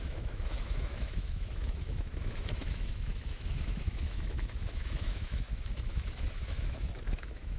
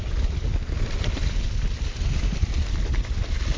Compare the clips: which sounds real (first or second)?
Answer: second